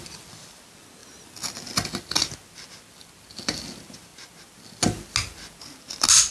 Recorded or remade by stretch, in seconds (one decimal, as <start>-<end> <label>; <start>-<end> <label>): 0.0-6.3 recorded

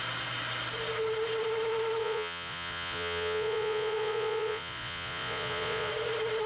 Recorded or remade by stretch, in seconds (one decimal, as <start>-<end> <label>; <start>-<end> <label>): 0.0-2.0 recorded; 2.0-5.9 remade; 5.9-6.5 recorded